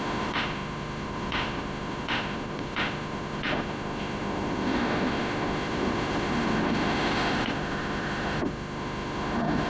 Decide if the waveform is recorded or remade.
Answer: remade